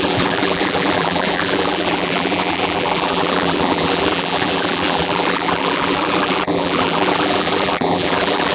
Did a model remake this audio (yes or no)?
yes